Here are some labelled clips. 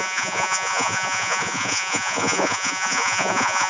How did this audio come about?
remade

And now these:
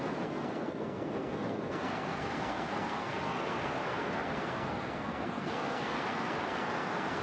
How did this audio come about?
remade